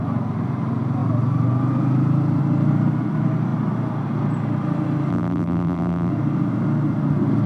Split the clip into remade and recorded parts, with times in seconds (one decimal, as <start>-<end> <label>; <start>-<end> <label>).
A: 0.0-5.1 recorded; 5.1-6.1 remade; 6.1-7.5 recorded